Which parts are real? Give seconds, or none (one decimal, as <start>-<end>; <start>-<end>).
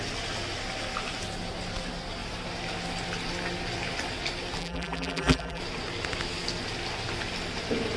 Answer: 0.0-4.6; 5.6-8.0